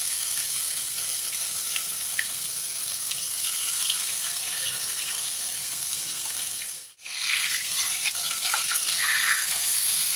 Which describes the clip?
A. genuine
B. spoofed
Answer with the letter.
B